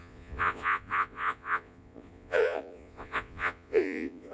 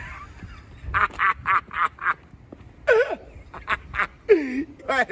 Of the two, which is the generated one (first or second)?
first